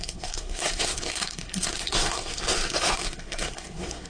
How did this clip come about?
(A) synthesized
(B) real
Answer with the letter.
A